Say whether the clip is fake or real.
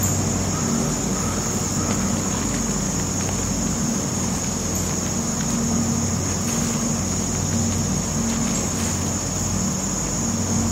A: real